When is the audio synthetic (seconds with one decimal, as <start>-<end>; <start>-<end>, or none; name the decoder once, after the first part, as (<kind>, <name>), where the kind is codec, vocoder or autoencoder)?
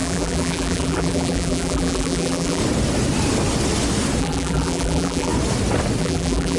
0.0-2.6 (vocoder, BigVGAN v2); 4.2-5.3; 6.0-6.6